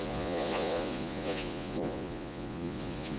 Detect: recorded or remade remade